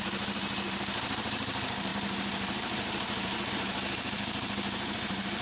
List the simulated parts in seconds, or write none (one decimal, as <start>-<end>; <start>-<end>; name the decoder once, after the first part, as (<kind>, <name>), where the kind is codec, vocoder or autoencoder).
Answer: 0.0-5.4 (vocoder, BigVGAN v2)